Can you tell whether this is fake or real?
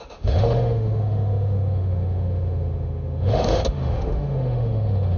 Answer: fake